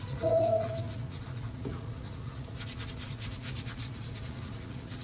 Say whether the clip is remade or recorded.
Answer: remade